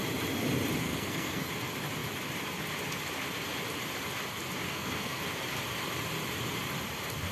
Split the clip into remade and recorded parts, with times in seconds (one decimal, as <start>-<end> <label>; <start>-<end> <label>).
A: 0.0-0.8 recorded; 0.8-1.5 remade; 1.5-4.7 recorded; 4.7-5.2 remade; 5.2-7.3 recorded